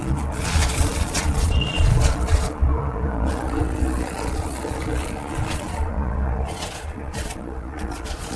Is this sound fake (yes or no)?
yes